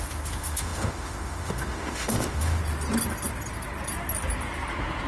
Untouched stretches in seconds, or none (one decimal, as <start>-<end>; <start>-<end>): 2.6-5.1

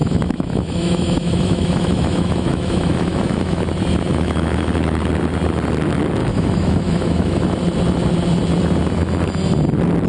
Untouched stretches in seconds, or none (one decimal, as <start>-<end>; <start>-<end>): 3.6-4.1; 5.0-6.2; 7.4-10.1

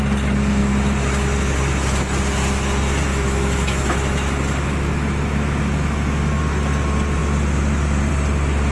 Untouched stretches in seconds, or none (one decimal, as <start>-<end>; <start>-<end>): 0.0-3.1; 6.4-8.7

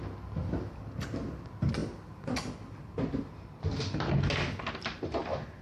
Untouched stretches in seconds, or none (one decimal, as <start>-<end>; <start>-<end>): 0.0-5.6

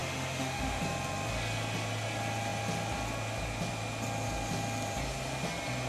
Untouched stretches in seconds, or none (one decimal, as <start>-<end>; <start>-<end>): 0.8-5.9

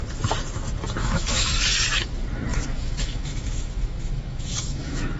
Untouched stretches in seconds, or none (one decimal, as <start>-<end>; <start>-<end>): 0.0-1.0; 1.5-2.5

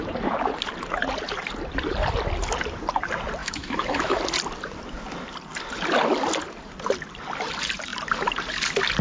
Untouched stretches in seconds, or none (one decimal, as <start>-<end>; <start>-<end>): 0.0-3.4; 4.2-9.0